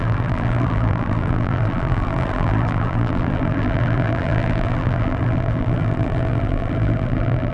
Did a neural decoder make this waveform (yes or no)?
yes